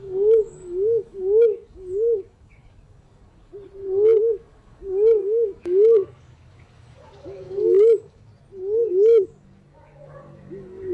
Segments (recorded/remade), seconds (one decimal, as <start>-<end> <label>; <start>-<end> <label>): 0.0-3.5 remade; 3.5-4.2 recorded; 4.2-8.3 remade; 8.3-8.9 recorded; 8.9-10.9 remade